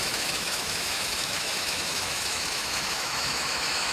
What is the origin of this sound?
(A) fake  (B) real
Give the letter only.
A